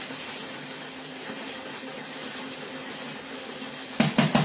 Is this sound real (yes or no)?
yes